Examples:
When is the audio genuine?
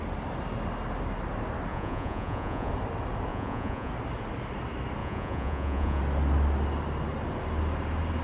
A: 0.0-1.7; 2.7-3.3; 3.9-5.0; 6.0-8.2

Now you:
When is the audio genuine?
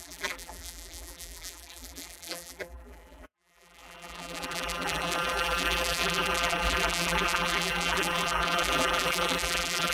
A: none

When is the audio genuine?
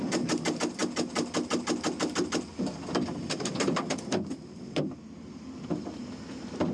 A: 0.0-6.7